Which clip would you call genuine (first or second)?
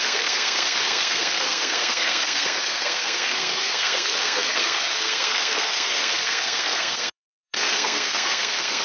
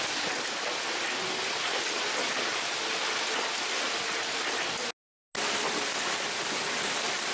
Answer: second